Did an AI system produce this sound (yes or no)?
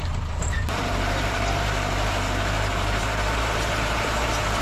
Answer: yes